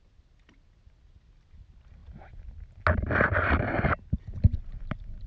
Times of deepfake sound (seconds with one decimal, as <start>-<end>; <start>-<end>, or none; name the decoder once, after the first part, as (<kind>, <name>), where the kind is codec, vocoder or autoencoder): none